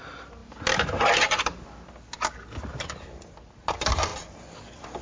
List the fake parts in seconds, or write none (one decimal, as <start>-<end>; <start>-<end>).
none